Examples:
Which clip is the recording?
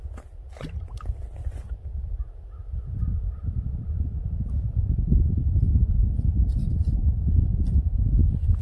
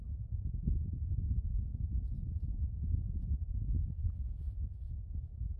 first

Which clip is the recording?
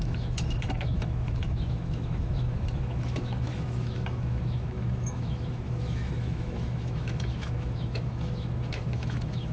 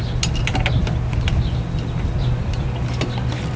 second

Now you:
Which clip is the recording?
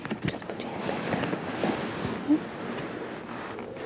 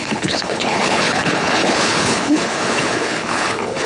first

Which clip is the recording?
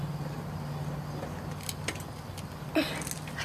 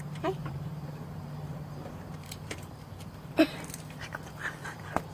first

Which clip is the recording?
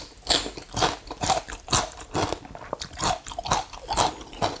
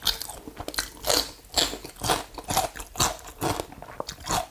second